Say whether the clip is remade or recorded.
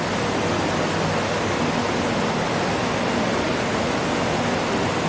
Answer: recorded